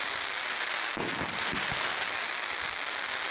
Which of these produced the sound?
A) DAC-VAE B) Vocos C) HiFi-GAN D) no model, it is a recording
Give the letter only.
D